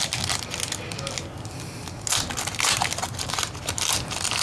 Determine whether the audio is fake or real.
real